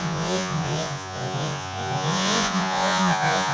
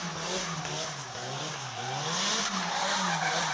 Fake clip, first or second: first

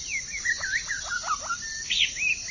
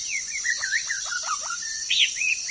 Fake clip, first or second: second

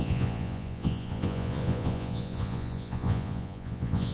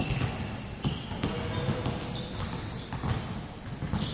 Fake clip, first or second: first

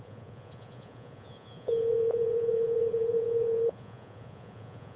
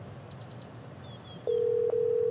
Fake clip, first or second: first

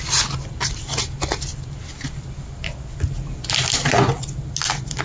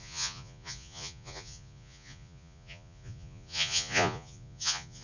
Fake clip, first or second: second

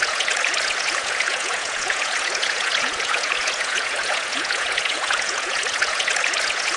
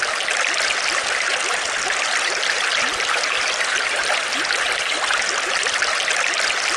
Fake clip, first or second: first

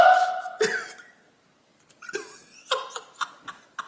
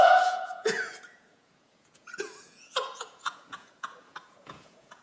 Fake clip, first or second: second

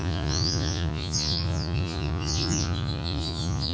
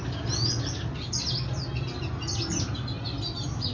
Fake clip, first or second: first